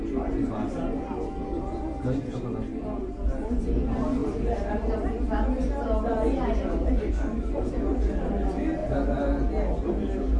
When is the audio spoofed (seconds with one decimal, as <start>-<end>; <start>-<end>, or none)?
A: none